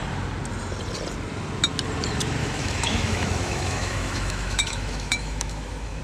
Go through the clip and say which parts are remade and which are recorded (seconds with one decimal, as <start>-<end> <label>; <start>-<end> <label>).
0.0-2.4 recorded; 2.4-6.0 remade